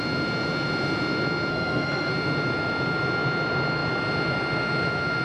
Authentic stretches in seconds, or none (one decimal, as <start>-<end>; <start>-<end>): 0.0-1.5; 2.1-5.2